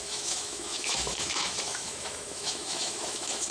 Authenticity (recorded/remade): remade